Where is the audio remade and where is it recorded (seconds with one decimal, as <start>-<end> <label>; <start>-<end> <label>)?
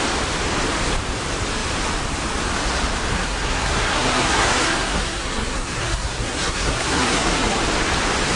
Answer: 0.0-3.1 recorded; 3.1-7.6 remade; 7.6-8.4 recorded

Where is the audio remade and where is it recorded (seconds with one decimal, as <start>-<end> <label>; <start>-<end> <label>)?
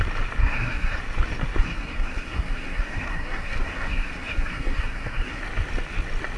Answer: 0.0-0.4 recorded; 0.4-1.0 remade; 1.0-1.6 recorded; 1.6-5.4 remade; 5.4-6.4 recorded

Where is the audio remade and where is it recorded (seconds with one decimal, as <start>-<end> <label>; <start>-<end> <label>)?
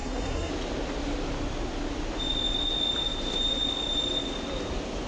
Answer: 0.0-0.5 remade; 0.5-5.1 recorded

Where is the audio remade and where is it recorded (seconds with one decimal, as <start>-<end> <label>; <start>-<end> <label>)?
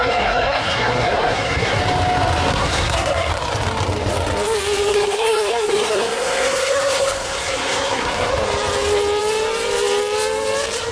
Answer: 0.0-1.8 remade; 1.8-2.5 recorded; 2.5-3.3 remade; 3.3-4.9 recorded; 4.9-8.3 remade; 8.3-10.9 recorded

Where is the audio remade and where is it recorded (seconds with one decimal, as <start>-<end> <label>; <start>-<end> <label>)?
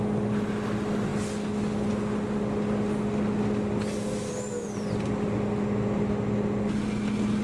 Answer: 0.0-7.4 recorded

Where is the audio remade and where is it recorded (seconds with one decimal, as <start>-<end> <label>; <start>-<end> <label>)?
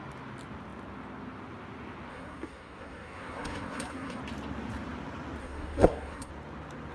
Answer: 0.0-2.1 recorded; 2.1-4.2 remade; 4.2-5.4 recorded; 5.4-6.3 remade; 6.3-6.9 recorded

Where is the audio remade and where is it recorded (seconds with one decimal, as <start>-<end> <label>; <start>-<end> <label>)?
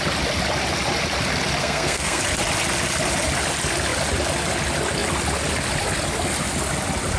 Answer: 0.0-1.6 recorded; 1.6-2.2 remade; 2.2-7.2 recorded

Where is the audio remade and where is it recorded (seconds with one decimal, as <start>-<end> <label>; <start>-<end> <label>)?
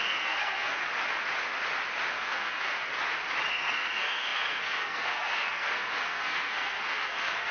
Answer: 0.0-0.8 remade; 0.8-2.1 recorded; 2.1-2.9 remade; 2.9-3.5 recorded; 3.5-7.5 remade